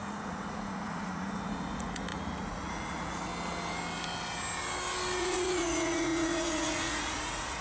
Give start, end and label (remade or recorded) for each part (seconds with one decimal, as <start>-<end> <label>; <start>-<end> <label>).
0.0-3.3 remade; 3.3-5.2 recorded; 5.2-7.6 remade